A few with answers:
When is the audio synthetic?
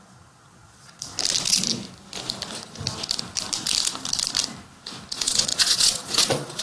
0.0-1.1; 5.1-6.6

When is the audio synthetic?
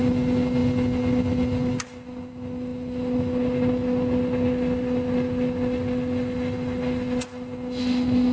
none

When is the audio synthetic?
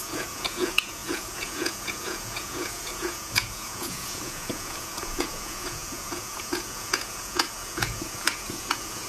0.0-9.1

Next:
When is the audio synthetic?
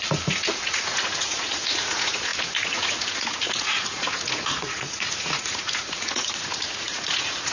0.0-7.5